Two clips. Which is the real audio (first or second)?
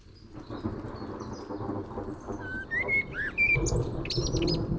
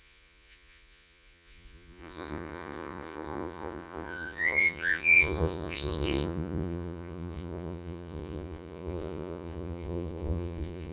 first